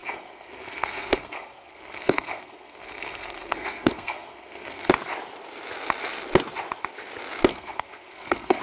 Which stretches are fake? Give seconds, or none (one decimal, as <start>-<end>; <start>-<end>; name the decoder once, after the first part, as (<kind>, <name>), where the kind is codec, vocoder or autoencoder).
0.0-4.9 (codec, SNAC); 7.5-8.6